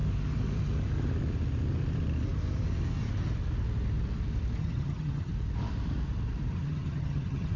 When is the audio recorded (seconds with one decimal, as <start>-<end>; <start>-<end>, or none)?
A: 0.0-4.6; 5.3-6.5